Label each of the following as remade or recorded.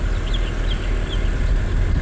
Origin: recorded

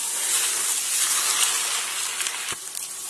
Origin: recorded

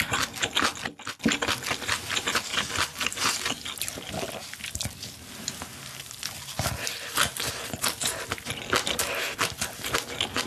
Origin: recorded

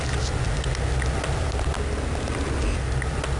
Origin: recorded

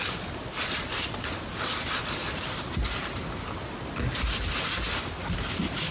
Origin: recorded